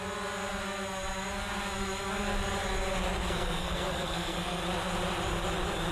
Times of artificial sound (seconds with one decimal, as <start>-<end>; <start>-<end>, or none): 3.2-4.6